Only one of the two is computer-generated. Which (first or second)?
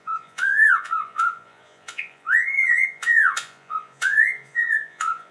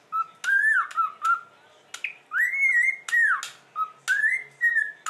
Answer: first